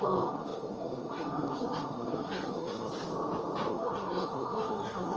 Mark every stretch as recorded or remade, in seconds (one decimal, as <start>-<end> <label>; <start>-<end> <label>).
0.0-2.9 remade; 2.9-3.7 recorded; 3.7-5.2 remade